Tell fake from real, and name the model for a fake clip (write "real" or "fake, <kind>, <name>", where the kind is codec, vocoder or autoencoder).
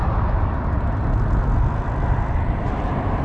real